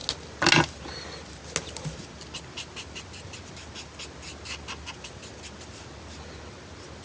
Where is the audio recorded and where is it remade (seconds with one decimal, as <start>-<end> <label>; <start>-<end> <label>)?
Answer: 0.0-7.0 recorded

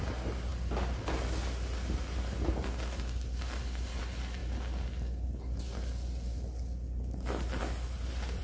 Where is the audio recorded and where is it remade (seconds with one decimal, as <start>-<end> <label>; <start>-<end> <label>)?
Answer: 0.0-8.4 recorded

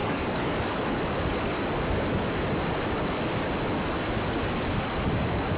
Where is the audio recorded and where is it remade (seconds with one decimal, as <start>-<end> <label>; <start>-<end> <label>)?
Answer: 0.0-0.9 remade; 0.9-5.6 recorded

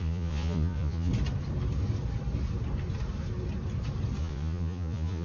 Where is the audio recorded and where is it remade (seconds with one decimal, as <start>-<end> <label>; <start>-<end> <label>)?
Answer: 0.0-1.1 remade; 1.1-4.2 recorded; 4.2-5.2 remade

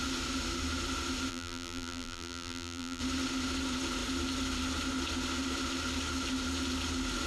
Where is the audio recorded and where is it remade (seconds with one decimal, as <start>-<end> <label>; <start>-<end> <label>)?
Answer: 0.0-1.3 recorded; 1.3-3.0 remade; 3.0-7.3 recorded

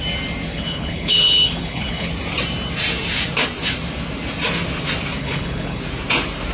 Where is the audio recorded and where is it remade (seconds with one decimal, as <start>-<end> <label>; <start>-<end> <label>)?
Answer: 0.0-0.5 recorded; 0.5-2.1 remade; 2.1-5.2 recorded; 5.2-5.8 remade; 5.8-6.5 recorded

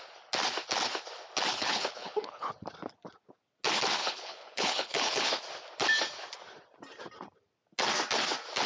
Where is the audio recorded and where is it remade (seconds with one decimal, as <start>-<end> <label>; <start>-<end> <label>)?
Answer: 0.0-1.5 recorded; 1.5-2.5 remade; 2.5-4.0 recorded; 4.0-5.3 remade; 5.3-8.7 recorded